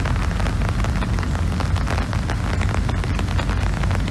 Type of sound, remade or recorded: recorded